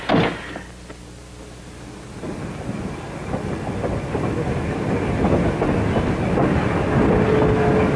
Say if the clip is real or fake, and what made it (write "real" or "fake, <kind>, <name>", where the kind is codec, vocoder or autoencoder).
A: real